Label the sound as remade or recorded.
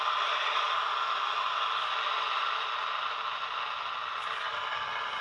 recorded